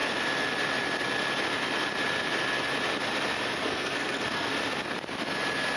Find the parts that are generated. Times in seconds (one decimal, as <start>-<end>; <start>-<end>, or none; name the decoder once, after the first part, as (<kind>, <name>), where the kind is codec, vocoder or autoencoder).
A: 3.6-4.5 (codec, SNAC)